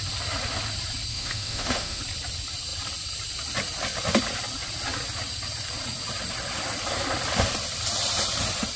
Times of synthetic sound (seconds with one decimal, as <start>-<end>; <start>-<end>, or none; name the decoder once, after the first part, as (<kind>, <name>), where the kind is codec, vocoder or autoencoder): 1.1-2.0 (autoencoder, DAC-VAE)